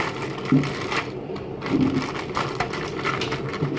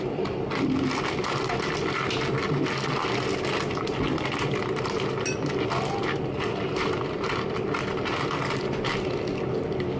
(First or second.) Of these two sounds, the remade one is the first